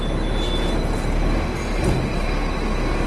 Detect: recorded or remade recorded